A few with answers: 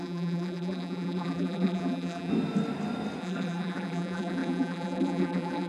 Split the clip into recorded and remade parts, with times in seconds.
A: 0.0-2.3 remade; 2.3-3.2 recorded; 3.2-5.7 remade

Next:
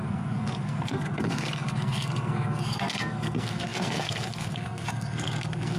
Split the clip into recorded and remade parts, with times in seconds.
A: 0.0-5.8 remade

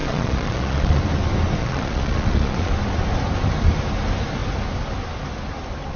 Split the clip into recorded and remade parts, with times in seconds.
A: 0.0-1.0 remade; 1.0-1.6 recorded; 1.6-2.7 remade; 2.7-6.0 recorded